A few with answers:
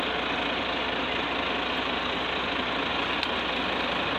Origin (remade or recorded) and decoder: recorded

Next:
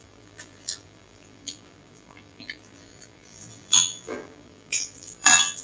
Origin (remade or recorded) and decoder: remade, vocoder, BigVGAN v2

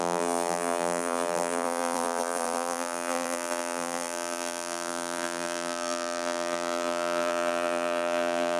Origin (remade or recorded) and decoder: remade, vocoder, BigVGAN v2